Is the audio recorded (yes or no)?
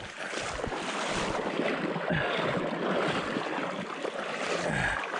yes